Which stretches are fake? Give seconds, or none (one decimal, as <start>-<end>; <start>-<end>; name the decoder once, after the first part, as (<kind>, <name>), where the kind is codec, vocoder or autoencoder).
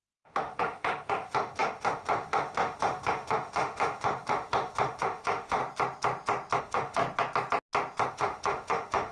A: 0.0-5.6 (autoencoder, DAC-VAE); 6.6-7.0; 8.1-9.1